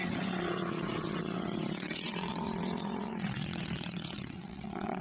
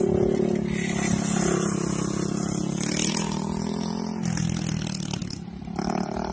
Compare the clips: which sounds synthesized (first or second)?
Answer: first